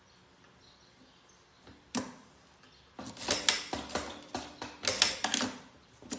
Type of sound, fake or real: real